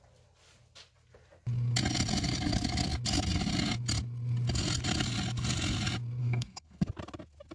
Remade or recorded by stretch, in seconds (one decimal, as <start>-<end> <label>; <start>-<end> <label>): 0.0-6.2 recorded; 6.2-6.9 remade; 6.9-7.5 recorded